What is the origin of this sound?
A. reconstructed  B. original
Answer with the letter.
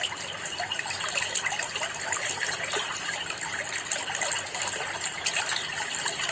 B